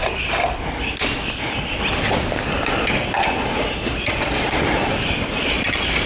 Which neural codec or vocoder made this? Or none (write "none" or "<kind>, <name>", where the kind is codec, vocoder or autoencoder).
none